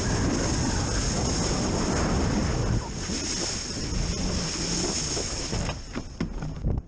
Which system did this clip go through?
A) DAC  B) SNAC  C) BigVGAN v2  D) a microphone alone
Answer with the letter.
D